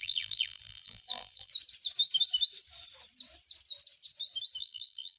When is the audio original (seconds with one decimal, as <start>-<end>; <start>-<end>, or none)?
1.5-4.6